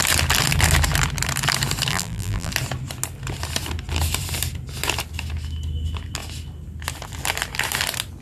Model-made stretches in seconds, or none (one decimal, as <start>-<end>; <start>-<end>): 1.9-2.5